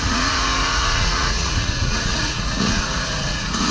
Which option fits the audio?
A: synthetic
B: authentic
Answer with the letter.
A